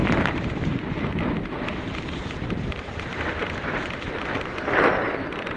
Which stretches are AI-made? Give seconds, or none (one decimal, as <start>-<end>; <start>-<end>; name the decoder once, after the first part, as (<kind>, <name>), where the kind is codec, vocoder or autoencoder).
0.0-5.6 (vocoder, BigVGAN v2)